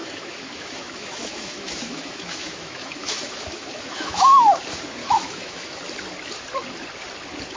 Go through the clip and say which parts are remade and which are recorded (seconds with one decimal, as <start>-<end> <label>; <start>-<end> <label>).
0.0-4.6 remade; 4.6-5.0 recorded; 5.0-5.8 remade; 5.8-7.6 recorded

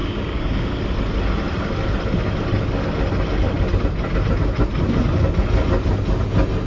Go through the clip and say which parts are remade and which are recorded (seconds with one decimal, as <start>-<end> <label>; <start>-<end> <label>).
0.0-0.8 remade; 0.8-6.7 recorded

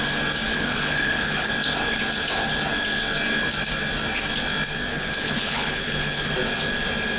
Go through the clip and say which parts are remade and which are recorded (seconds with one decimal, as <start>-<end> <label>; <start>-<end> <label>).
0.0-0.5 recorded; 0.5-1.5 remade; 1.5-4.9 recorded; 4.9-6.3 remade; 6.3-7.2 recorded

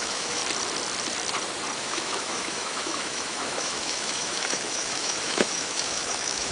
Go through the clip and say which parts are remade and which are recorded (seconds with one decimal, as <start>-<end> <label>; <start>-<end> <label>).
0.0-0.4 remade; 0.4-1.8 recorded; 1.8-6.5 remade

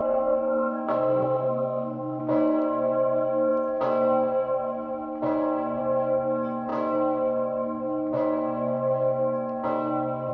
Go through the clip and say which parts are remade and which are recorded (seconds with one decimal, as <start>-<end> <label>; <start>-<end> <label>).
0.0-2.2 remade; 2.2-10.3 recorded